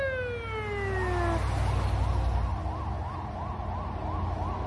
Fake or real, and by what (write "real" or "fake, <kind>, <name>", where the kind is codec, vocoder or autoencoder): real